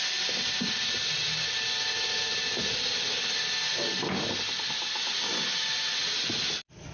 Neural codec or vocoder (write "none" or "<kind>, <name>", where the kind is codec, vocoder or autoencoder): none